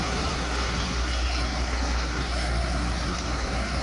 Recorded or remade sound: remade